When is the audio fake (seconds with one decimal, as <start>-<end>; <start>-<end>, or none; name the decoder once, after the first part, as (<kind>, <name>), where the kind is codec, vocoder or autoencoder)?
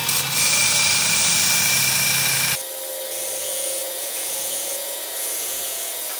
3.4-6.2 (vocoder, Vocos)